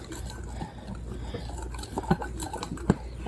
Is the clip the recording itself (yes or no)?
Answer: yes